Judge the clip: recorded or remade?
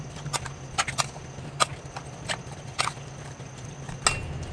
recorded